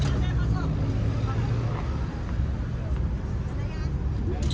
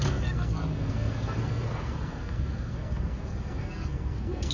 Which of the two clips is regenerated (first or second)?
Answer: second